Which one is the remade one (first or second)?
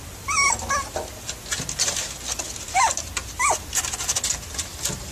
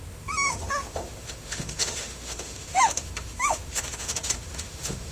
second